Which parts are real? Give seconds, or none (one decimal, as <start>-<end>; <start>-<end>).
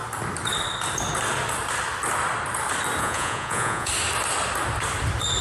0.0-3.0; 3.9-5.4